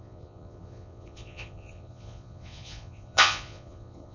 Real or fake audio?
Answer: fake